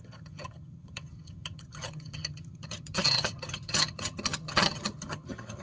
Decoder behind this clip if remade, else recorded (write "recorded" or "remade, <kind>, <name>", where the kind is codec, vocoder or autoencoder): remade, vocoder, HiFi-GAN